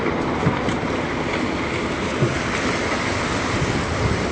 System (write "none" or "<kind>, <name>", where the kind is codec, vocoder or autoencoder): none